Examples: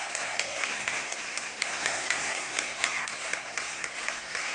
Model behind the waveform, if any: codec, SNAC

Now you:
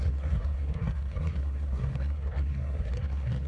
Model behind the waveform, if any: codec, SNAC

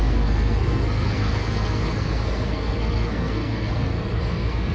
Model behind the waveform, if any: codec, SNAC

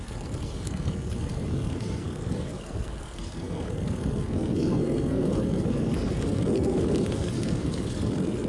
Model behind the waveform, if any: codec, SNAC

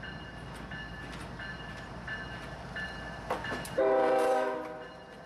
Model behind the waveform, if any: none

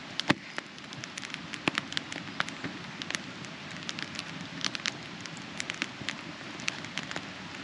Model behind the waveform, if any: none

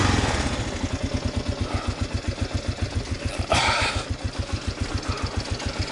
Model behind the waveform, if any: none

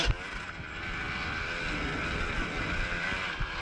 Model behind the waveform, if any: none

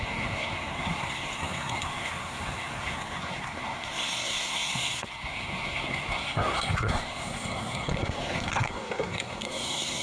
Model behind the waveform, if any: codec, SNAC